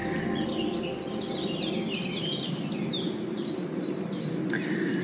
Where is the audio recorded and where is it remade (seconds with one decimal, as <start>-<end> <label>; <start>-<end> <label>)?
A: 0.0-5.0 recorded

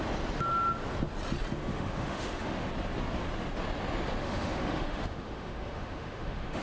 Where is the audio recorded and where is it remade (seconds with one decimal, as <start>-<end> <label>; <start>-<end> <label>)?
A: 0.0-1.6 recorded; 1.6-2.7 remade; 2.7-4.2 recorded; 4.2-6.6 remade

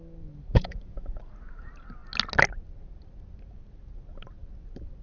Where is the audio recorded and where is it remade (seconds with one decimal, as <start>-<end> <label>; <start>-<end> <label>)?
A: 0.0-0.5 recorded; 0.5-1.2 remade; 1.2-5.0 recorded

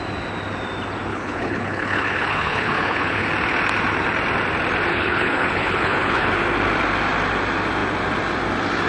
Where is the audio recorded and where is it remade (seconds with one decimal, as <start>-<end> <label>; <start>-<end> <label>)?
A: 0.0-1.1 recorded; 1.1-3.3 remade; 3.3-4.9 recorded; 4.9-6.3 remade; 6.3-8.9 recorded

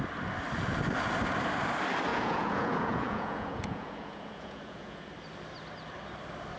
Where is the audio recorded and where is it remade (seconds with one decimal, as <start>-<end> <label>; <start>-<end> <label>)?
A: 0.0-2.1 recorded; 2.1-5.1 remade; 5.1-6.6 recorded

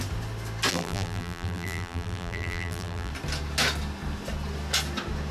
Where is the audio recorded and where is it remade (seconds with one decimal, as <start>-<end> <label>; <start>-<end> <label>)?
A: 0.0-0.7 recorded; 0.7-3.1 remade; 3.1-5.3 recorded